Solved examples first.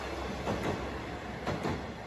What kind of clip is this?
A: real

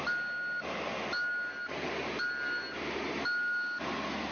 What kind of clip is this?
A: real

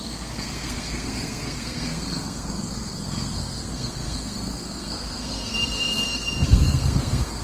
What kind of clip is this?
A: fake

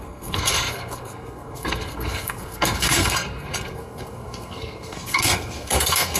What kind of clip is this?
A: fake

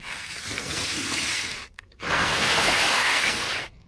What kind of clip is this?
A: fake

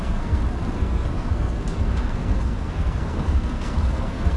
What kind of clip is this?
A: fake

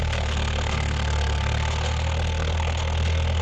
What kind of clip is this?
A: fake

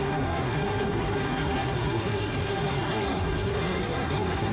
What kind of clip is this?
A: fake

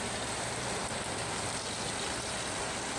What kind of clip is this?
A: real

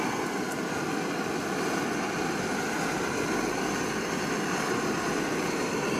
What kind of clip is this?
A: real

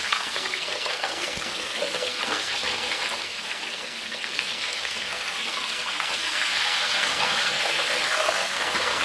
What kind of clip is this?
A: fake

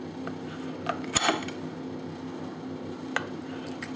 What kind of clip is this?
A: real